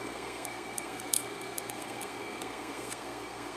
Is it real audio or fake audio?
fake